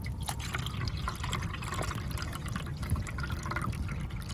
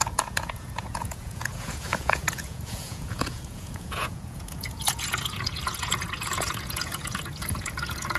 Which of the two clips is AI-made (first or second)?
second